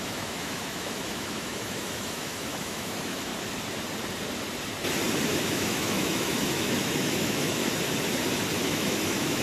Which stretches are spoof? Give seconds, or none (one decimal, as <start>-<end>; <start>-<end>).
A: 0.0-3.3; 5.4-7.6; 8.6-9.4